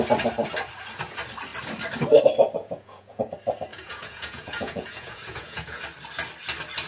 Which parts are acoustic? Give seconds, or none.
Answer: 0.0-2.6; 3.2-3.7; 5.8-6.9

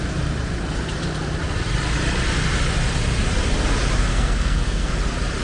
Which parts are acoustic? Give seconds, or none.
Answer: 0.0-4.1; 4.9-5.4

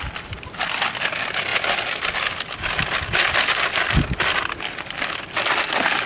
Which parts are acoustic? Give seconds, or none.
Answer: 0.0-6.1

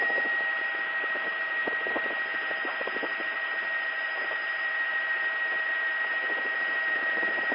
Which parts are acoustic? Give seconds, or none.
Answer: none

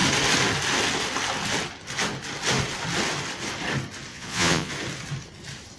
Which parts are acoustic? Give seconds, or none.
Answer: 0.0-4.1; 4.7-5.8

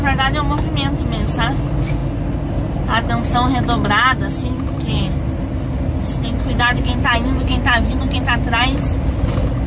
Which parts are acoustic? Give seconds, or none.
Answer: 0.0-9.7

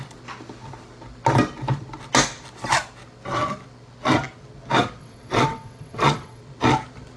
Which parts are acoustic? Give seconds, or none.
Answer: 0.0-5.0; 6.4-7.2

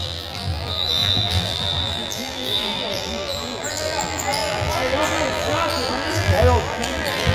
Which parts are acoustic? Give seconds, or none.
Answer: none